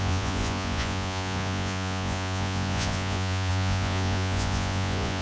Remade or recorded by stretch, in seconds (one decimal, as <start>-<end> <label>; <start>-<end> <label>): 0.0-5.2 remade